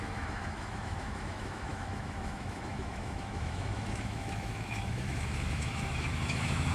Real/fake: fake